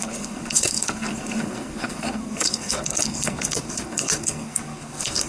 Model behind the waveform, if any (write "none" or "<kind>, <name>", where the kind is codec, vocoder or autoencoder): codec, SNAC